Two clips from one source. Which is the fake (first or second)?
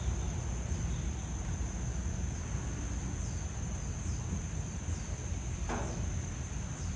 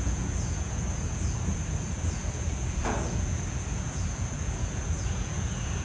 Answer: second